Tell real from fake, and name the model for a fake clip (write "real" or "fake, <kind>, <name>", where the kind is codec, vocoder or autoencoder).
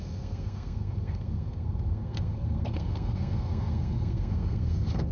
fake, codec, SNAC